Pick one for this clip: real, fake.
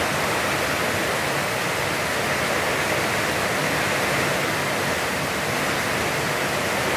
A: real